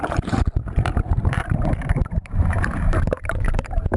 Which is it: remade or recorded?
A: remade